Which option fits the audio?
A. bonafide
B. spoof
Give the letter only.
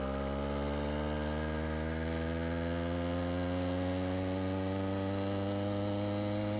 A